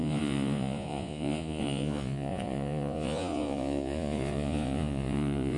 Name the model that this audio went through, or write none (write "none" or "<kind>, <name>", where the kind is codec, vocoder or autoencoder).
vocoder, Vocos